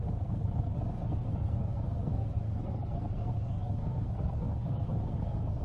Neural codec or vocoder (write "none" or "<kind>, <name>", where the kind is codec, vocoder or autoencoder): codec, SNAC